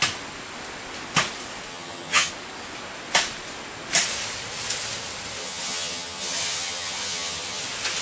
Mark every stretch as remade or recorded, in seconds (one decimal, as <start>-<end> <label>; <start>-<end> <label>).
0.0-1.7 recorded; 1.7-2.3 remade; 2.3-5.4 recorded; 5.4-7.6 remade; 7.6-8.0 recorded